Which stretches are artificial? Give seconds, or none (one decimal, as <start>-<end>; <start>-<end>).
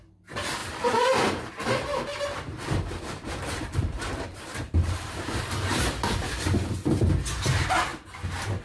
0.6-1.5; 1.9-6.7